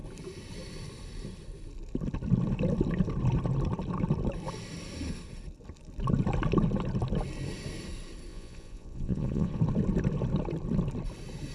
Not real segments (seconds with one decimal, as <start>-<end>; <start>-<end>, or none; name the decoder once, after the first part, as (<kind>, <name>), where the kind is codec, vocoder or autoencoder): 8.3-9.6 (vocoder, Vocos)

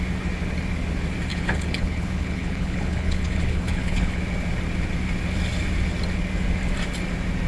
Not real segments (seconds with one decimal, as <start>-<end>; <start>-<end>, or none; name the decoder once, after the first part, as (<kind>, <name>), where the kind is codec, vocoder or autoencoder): 1.3-4.2 (codec, HILCodec)

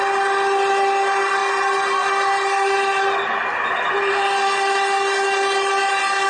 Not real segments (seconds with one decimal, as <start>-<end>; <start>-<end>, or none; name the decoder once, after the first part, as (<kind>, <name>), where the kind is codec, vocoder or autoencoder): none

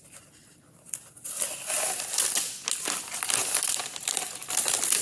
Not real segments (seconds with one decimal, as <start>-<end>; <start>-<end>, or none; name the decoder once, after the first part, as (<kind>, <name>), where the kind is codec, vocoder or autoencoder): none

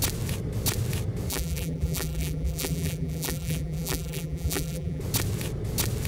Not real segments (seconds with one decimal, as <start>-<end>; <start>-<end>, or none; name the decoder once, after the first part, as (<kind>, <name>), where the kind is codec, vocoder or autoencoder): 1.3-5.0 (vocoder, BigVGAN v2)

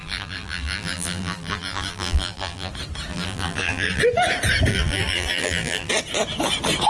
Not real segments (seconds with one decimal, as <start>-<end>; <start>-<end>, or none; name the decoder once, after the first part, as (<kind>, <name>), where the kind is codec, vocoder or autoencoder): 0.0-2.7 (vocoder, BigVGAN v2); 3.1-4.0; 4.7-5.9

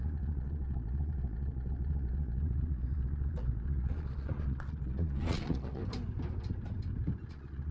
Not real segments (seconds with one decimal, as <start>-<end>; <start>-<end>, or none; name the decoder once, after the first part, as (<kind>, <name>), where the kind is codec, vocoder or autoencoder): 0.0-5.8 (vocoder, Vocos); 7.3-7.7